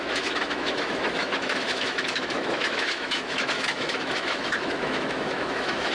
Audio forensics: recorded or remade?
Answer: remade